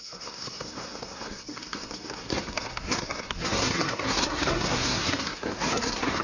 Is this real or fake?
fake